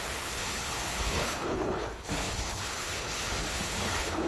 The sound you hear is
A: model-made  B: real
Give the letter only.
A